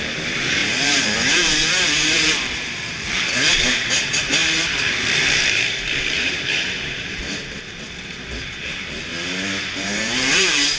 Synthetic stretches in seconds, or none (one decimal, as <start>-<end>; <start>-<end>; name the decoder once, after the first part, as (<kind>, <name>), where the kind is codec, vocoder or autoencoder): 0.0-4.4 (vocoder, BigVGAN v2); 5.0-9.1; 9.7-10.8